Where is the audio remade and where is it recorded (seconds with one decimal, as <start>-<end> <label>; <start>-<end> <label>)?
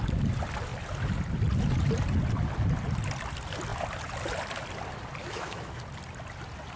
0.0-5.2 recorded; 5.2-5.8 remade; 5.8-6.8 recorded